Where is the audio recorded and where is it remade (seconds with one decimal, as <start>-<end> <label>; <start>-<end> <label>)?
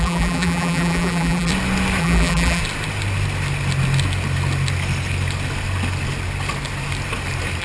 0.0-1.5 remade; 1.5-2.0 recorded; 2.0-2.6 remade; 2.6-7.6 recorded